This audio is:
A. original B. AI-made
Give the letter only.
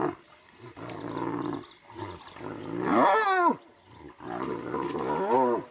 A